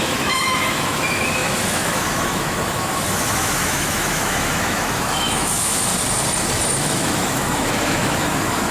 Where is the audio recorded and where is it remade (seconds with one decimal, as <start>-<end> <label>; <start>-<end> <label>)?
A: 0.0-5.9 remade; 5.9-6.8 recorded; 6.8-8.7 remade